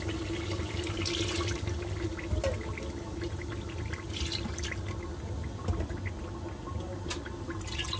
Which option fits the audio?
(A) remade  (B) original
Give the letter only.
B